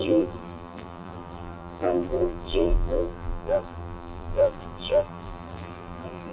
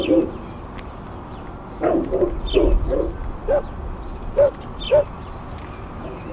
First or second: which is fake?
first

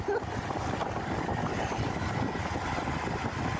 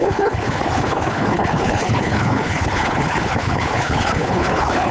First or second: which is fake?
second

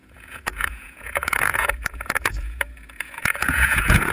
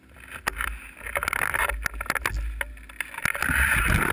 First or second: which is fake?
first